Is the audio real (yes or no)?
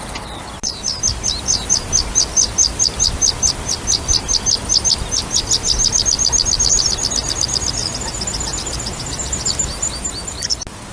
yes